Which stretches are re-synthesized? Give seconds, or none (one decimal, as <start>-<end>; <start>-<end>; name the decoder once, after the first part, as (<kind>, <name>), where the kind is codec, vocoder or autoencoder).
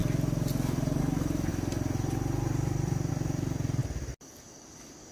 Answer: 1.0-3.8 (vocoder, BigVGAN v2)